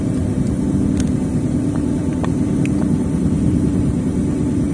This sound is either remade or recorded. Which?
remade